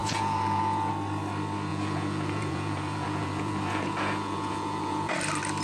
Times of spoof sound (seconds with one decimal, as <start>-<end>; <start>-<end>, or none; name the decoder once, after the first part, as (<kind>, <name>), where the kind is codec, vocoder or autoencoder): 0.0-0.9 (vocoder, Vocos); 1.7-5.1